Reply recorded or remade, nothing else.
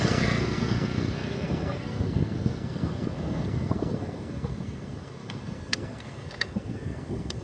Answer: remade